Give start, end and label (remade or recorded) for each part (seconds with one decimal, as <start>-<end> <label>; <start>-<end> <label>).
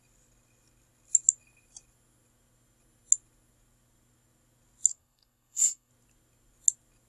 0.0-4.9 recorded; 4.9-5.9 remade; 5.9-7.1 recorded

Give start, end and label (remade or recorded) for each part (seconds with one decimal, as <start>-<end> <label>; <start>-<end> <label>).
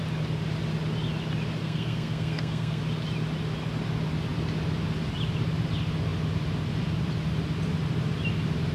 0.0-1.6 recorded; 1.6-2.8 remade; 2.8-8.7 recorded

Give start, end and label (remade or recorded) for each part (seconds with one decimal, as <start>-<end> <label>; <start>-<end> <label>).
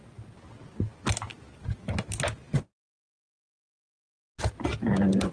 0.0-5.3 recorded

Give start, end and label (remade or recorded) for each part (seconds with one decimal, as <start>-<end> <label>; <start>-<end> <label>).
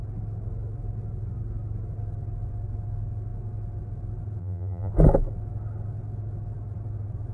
0.0-4.4 recorded; 4.4-4.9 remade; 4.9-7.3 recorded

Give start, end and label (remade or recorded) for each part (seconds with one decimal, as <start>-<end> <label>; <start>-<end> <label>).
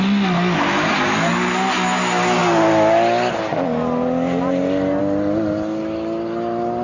0.0-6.8 recorded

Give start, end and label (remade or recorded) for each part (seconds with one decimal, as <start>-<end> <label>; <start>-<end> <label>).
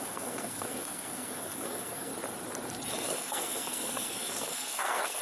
0.0-2.1 remade; 2.1-2.9 recorded; 2.9-5.2 remade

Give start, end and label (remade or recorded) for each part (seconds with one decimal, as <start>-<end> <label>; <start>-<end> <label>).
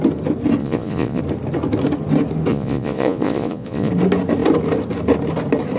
0.0-0.6 recorded; 0.6-1.2 remade; 1.2-2.5 recorded; 2.5-3.9 remade; 3.9-5.8 recorded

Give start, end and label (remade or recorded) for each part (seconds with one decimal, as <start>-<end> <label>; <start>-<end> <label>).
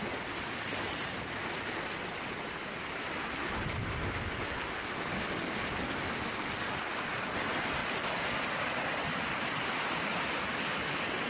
0.0-7.8 recorded; 7.8-8.3 remade; 8.3-11.3 recorded